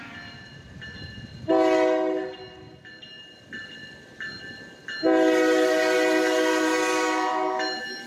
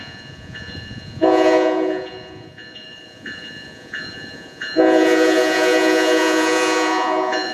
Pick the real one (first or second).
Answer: first